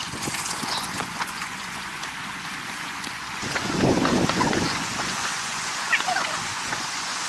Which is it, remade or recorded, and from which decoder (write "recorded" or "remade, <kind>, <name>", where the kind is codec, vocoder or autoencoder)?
remade, vocoder, Vocos